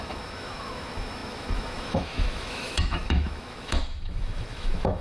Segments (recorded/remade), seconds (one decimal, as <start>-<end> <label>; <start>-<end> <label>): 0.0-5.0 remade